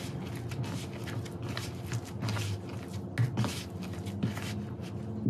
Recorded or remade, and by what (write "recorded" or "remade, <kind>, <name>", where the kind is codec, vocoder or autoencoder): recorded